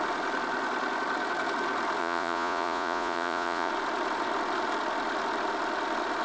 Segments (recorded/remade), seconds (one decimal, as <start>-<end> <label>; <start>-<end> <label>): 0.0-2.0 recorded; 2.0-3.7 remade; 3.7-6.2 recorded